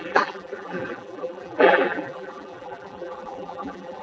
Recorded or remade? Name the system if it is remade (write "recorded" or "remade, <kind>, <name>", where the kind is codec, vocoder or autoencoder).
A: remade, vocoder, BigVGAN v2